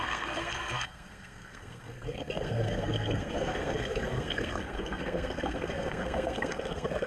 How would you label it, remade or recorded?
remade